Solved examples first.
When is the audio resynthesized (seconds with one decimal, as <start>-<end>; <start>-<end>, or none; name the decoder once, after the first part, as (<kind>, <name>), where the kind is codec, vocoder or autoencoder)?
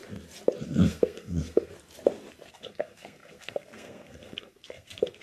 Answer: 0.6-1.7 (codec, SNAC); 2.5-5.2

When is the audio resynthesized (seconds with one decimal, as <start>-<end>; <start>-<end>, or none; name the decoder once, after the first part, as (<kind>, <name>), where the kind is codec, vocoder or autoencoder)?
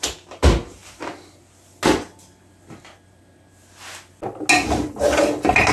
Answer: none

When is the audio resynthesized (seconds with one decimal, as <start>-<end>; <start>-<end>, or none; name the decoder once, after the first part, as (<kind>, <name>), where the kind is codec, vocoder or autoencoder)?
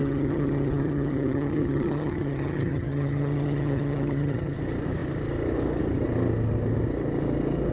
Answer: 0.0-4.6 (vocoder, HiFi-GAN)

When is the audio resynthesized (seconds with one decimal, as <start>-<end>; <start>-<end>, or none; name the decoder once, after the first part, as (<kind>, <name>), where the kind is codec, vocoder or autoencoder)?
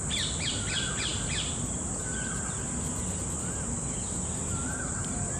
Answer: none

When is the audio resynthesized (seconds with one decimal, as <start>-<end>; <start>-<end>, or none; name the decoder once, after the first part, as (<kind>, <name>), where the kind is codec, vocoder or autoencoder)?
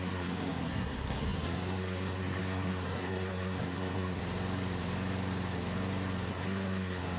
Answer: 0.0-4.2 (codec, SNAC); 6.3-7.2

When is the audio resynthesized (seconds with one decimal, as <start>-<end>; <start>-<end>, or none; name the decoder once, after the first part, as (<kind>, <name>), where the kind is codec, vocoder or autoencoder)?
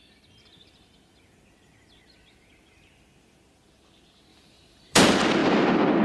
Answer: 4.3-5.0 (vocoder, BigVGAN v2); 5.4-6.0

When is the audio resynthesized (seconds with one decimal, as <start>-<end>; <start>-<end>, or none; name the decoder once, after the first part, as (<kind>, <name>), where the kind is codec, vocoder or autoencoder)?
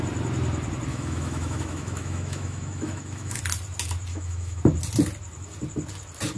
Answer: 0.9-3.4 (autoencoder, DAC-VAE); 4.1-4.6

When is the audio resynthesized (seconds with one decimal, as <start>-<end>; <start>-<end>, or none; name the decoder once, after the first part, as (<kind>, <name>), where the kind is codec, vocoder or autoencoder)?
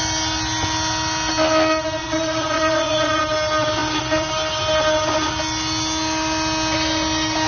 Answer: 2.0-3.2 (vocoder, Vocos)